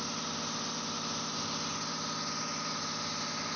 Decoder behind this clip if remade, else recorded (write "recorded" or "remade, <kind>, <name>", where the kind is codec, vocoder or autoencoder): recorded